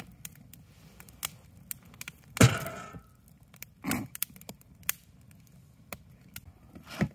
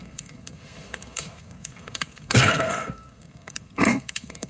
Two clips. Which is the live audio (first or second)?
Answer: first